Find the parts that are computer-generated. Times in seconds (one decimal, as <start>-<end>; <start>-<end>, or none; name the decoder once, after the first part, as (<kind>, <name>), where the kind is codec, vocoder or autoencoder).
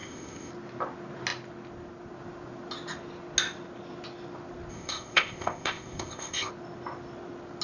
0.0-0.5 (codec, ZipCodec); 4.7-6.5